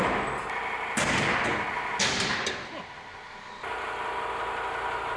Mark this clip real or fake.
real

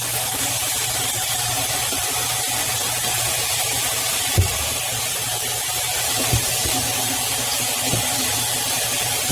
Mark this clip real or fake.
real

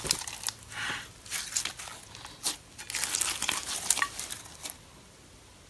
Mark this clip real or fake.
real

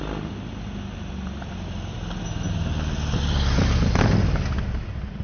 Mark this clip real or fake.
real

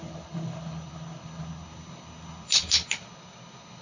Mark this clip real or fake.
fake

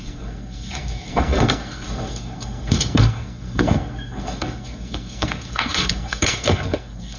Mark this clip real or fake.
fake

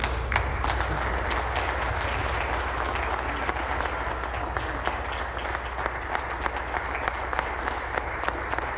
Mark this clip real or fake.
real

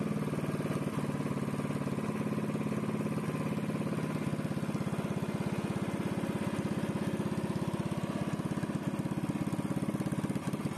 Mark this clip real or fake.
real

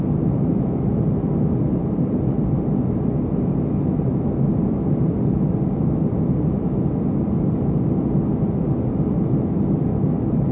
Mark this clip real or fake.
real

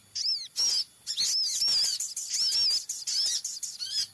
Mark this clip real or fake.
real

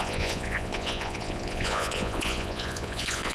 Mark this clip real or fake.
fake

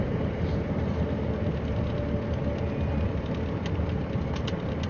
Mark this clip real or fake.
real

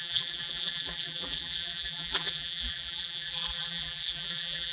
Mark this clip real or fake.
fake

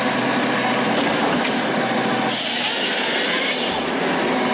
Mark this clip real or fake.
real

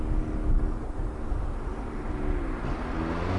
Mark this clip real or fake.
real